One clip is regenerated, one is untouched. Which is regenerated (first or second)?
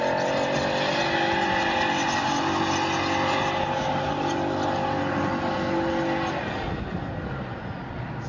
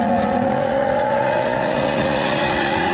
second